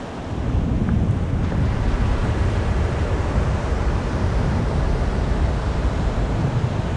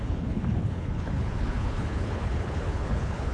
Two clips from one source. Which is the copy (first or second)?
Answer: second